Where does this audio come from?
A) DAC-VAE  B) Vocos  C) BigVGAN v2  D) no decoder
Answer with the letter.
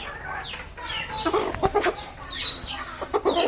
D